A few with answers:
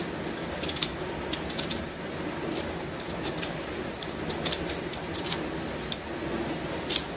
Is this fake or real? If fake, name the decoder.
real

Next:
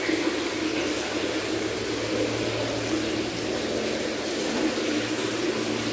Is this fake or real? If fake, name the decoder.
real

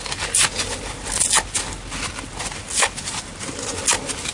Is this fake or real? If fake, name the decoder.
real